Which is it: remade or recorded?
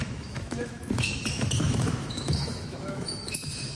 remade